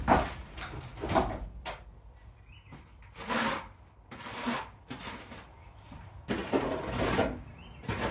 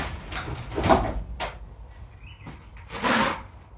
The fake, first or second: second